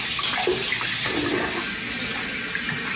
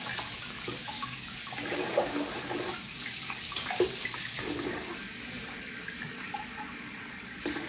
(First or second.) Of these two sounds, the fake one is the second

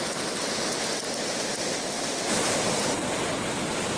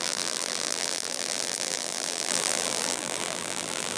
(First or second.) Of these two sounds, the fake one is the second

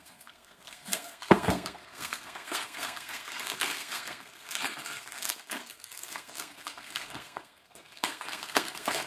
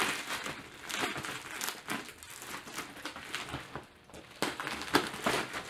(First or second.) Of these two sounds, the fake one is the first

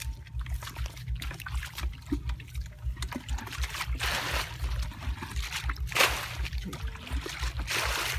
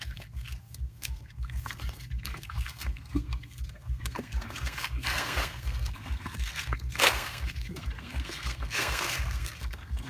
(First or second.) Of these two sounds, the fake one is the second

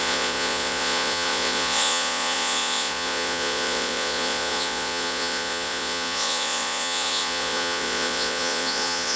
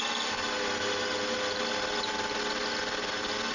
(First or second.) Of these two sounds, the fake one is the first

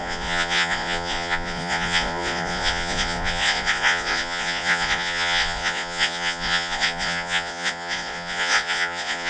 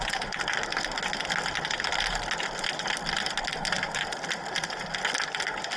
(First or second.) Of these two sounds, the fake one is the first